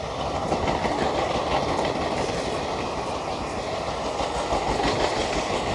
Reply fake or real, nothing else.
real